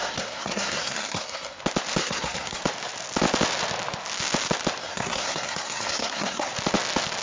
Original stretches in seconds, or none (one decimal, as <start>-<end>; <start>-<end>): 1.6-2.0; 2.6-4.8; 6.5-7.2